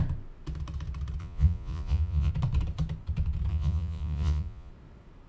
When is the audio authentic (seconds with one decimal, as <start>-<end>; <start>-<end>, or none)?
0.0-1.2; 2.3-3.5; 4.7-5.3